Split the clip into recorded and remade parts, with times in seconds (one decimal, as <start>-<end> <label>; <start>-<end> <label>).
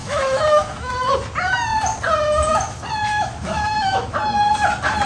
0.0-0.9 remade; 0.9-3.1 recorded; 3.1-4.1 remade; 4.1-5.1 recorded